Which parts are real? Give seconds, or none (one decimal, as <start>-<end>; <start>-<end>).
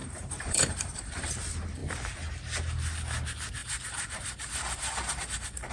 1.3-3.6